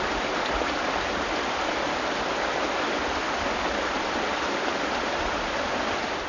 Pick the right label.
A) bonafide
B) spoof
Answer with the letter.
A